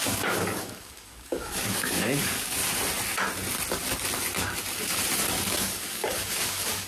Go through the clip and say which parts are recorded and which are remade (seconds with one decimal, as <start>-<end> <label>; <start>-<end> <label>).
0.0-2.6 remade; 2.6-5.6 recorded; 5.6-6.9 remade